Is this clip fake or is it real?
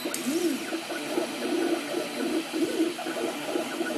real